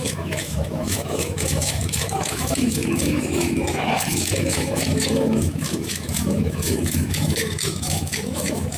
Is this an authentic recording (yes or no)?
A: no